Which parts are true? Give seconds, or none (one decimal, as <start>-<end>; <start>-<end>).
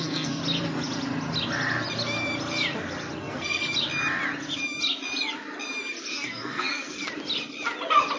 0.4-3.2; 3.6-6.1; 7.0-8.2